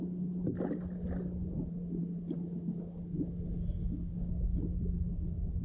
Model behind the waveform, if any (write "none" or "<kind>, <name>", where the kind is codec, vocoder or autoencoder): none